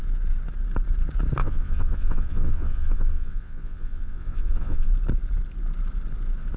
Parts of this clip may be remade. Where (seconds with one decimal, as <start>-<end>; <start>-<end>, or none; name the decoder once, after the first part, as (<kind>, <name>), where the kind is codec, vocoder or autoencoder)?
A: 1.4-4.9 (vocoder, WaveNeXt)